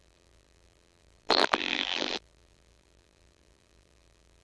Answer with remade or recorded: remade